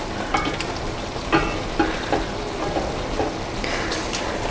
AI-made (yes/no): no